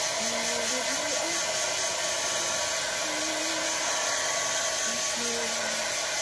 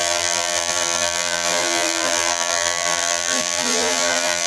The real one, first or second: first